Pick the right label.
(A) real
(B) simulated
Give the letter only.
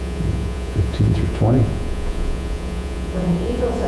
B